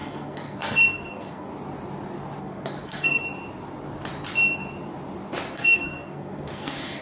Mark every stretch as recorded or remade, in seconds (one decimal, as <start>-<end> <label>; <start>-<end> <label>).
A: 0.0-1.5 remade; 1.5-2.4 recorded; 2.4-3.2 remade; 3.2-5.5 recorded; 5.5-7.0 remade